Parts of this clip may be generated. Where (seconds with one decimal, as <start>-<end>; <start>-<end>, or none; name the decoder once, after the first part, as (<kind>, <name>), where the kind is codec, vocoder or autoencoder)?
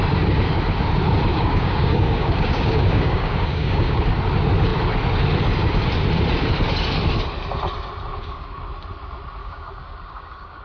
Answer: 1.3-4.0 (codec, DAC); 8.1-8.6; 9.4-10.6